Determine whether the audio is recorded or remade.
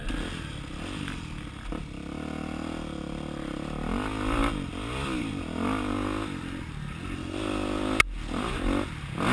recorded